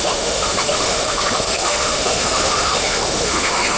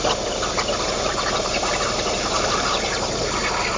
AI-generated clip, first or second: first